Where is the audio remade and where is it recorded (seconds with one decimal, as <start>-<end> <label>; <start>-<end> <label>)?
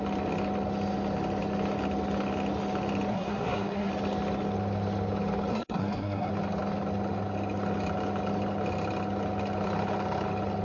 0.0-3.1 recorded; 3.1-3.9 remade; 3.9-5.5 recorded; 5.5-6.3 remade; 6.3-10.6 recorded